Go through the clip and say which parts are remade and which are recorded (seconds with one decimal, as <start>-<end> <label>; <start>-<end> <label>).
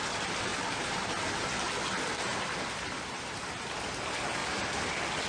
0.0-5.3 recorded